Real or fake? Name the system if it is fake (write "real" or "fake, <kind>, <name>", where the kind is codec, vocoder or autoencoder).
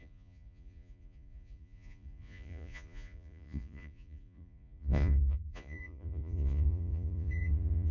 fake, vocoder, Vocos